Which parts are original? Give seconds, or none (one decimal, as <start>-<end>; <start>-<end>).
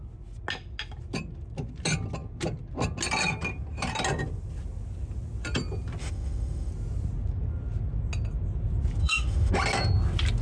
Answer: 0.0-6.0; 6.7-9.0; 9.5-10.4